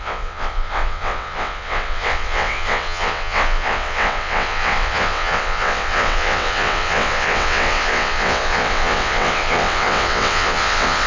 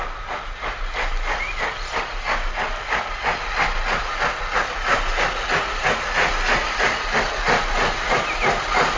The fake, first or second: first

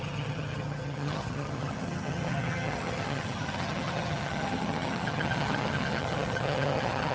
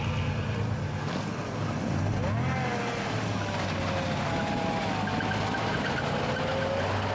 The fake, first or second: first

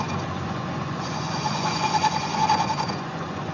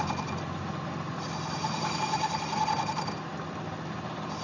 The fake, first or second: first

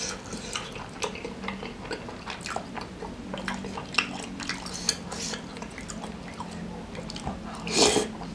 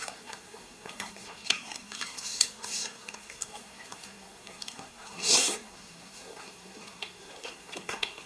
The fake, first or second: second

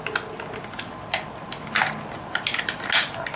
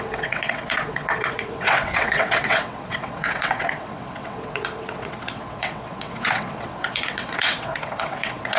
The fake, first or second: second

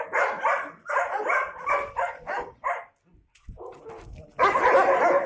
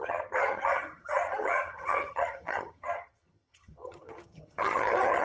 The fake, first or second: second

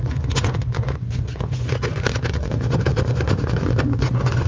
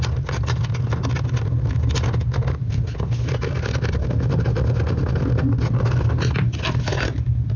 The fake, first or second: first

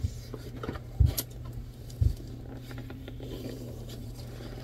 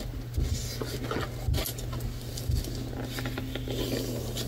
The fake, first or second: first